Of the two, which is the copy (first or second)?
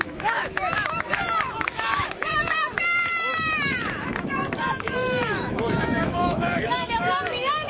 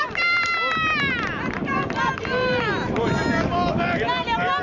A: first